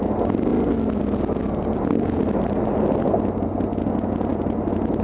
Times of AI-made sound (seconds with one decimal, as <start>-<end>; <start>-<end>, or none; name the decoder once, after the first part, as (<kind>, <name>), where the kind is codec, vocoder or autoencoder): none